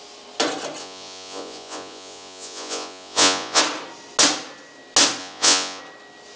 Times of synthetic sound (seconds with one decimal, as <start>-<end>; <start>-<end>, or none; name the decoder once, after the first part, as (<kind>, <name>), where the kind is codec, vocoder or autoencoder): 0.8-3.6 (vocoder, Vocos); 5.2-5.8